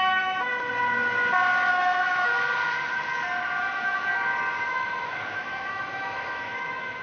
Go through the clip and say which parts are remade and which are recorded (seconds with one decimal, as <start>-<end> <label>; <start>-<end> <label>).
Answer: 0.0-0.5 remade; 0.5-1.7 recorded; 1.7-2.3 remade; 2.3-3.6 recorded; 3.6-4.1 remade; 4.1-4.7 recorded; 4.7-7.0 remade